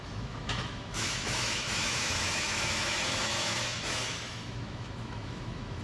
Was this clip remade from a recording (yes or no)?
yes